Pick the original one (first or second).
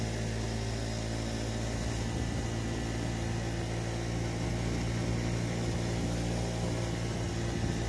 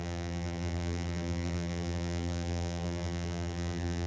first